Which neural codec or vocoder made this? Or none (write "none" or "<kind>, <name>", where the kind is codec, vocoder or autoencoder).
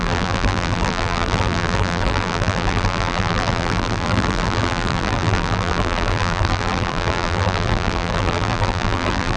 vocoder, BigVGAN v2